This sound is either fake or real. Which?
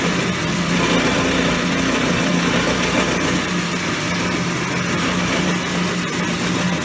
real